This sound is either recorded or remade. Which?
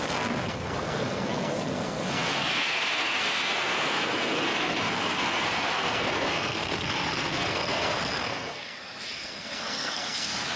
remade